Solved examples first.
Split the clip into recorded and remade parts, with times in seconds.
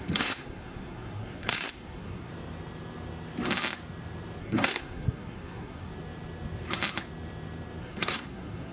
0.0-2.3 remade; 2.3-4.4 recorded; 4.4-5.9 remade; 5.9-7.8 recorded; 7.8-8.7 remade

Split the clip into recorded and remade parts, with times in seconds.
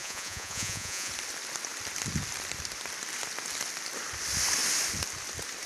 0.0-1.1 remade; 1.1-5.7 recorded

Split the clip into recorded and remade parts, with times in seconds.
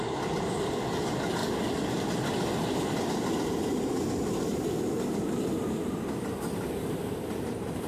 0.0-7.9 recorded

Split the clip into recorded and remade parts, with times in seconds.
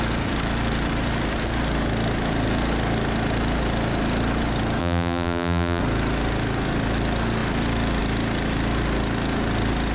0.0-4.8 recorded; 4.8-5.8 remade; 5.8-9.9 recorded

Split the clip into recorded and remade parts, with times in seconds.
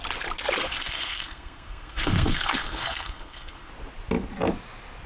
0.0-0.6 recorded; 0.6-3.7 remade; 3.7-5.1 recorded